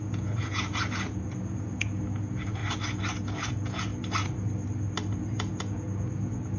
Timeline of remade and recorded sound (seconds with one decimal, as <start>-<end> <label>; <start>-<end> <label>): 0.0-2.6 remade; 2.6-3.2 recorded; 3.2-3.9 remade; 3.9-5.1 recorded; 5.1-6.6 remade